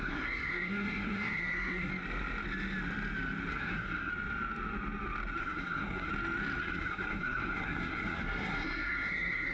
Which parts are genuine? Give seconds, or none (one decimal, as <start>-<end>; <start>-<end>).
1.9-3.5; 4.1-5.4; 6.1-6.6